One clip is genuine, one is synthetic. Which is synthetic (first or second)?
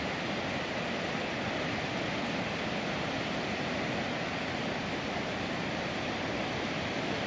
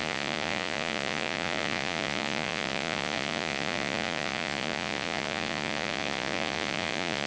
second